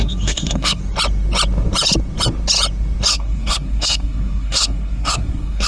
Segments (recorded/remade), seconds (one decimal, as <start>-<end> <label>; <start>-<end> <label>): 0.0-0.8 remade; 0.8-3.1 recorded; 3.1-5.7 remade